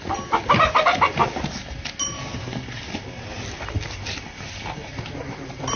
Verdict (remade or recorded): recorded